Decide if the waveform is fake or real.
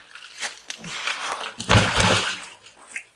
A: real